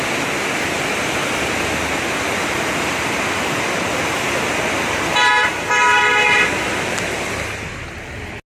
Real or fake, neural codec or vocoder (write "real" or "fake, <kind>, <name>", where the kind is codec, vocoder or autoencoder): real